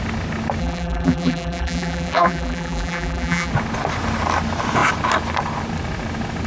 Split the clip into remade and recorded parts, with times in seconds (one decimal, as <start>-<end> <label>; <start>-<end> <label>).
0.0-0.6 recorded; 0.6-3.5 remade; 3.5-6.5 recorded